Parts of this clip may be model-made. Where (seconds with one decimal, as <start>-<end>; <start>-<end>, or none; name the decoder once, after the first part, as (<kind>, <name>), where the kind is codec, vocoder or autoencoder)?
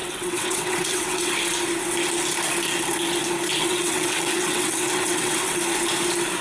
0.0-1.3 (vocoder, WaveNeXt); 3.5-5.6